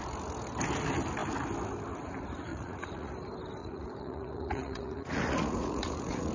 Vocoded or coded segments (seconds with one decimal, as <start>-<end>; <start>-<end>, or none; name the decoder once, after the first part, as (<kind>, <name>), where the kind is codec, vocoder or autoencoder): 2.5-3.1 (vocoder, Vocos); 3.6-6.3